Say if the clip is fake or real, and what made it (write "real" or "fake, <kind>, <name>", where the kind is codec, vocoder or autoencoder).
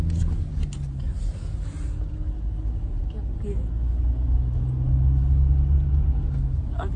real